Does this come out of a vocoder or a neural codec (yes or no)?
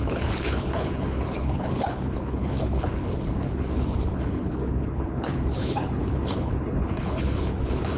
yes